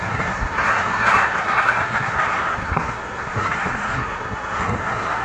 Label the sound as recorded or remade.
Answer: remade